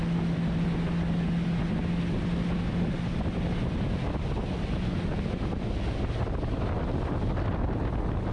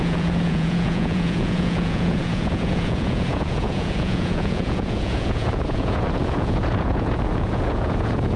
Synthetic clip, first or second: second